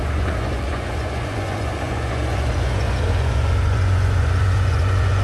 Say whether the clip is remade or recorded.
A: remade